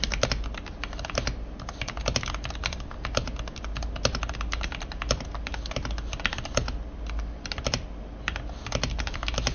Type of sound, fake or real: real